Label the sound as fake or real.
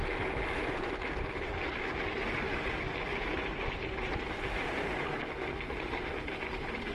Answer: real